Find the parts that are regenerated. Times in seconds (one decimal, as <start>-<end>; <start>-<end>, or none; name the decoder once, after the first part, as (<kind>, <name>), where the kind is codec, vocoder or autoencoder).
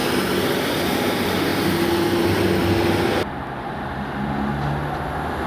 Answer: none